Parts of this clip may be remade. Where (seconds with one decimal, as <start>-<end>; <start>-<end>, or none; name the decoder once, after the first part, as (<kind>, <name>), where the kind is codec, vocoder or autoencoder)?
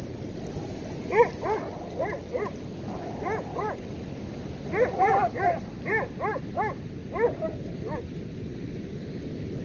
none